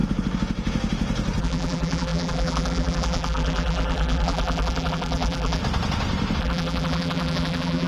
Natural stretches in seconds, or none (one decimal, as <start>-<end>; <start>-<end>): 0.0-1.4; 5.6-6.4

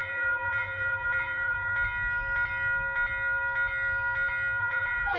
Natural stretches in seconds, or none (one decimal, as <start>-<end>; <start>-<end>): 1.7-4.6